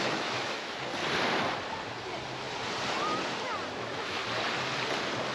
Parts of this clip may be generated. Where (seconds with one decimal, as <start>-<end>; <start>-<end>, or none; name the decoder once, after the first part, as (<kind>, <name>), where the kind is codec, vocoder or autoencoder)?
0.0-1.0 (autoencoder, DAC-VAE); 3.8-4.2